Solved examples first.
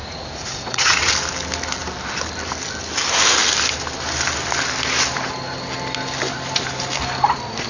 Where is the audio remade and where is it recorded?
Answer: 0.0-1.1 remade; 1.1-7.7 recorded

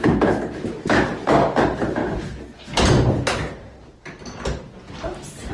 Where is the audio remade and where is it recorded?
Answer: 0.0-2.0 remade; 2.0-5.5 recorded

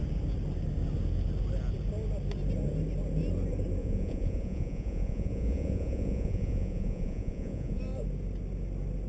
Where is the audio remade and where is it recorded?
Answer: 0.0-3.8 recorded; 3.8-7.8 remade; 7.8-9.1 recorded

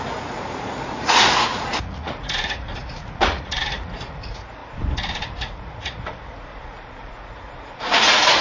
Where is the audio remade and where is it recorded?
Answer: 0.0-4.6 remade; 4.6-5.4 recorded; 5.4-8.4 remade